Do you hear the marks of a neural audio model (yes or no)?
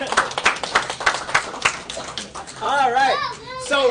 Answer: no